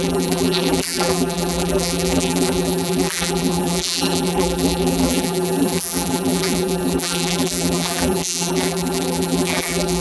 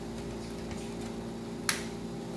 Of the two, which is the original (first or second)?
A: second